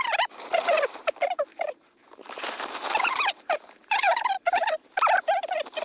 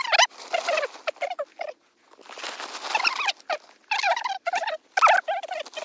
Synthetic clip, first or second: first